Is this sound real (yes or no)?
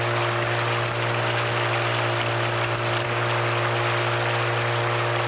yes